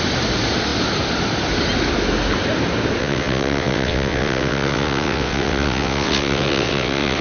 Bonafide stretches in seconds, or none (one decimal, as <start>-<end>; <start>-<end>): 0.0-3.0